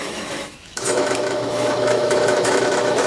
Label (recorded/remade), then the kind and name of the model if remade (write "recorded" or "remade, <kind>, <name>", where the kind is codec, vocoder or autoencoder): remade, autoencoder, DAC-VAE